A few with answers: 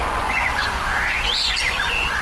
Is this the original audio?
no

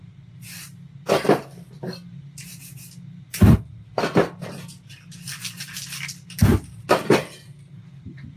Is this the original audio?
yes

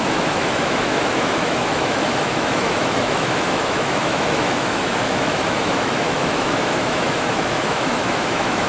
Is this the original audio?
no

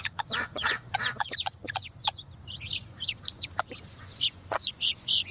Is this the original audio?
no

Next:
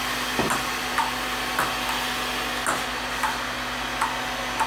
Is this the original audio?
yes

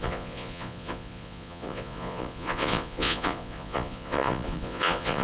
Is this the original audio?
no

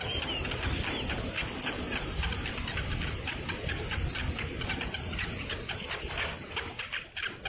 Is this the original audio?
yes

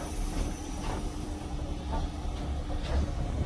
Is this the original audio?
yes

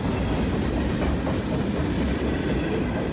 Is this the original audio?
yes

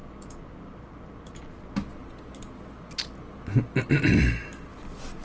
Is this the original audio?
yes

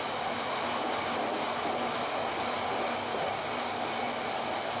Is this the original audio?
yes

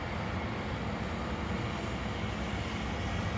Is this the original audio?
yes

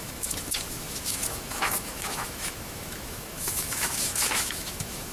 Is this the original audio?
no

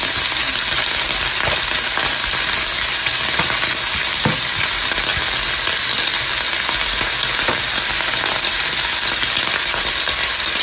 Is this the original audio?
yes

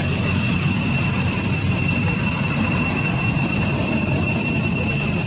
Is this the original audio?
no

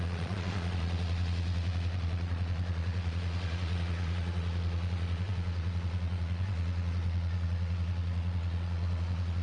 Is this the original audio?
no